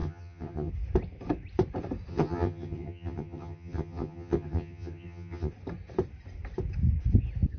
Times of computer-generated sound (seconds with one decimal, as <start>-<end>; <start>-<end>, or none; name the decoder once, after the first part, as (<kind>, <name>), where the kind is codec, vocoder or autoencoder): 0.0-0.7 (vocoder, HiFi-GAN); 2.1-5.5